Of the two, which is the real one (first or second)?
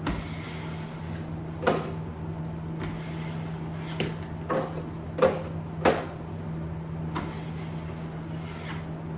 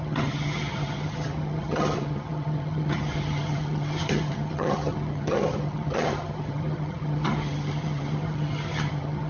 first